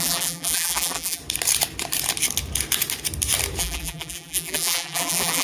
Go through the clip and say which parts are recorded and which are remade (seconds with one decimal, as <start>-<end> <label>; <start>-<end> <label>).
0.0-1.2 remade; 1.2-3.6 recorded; 3.6-5.4 remade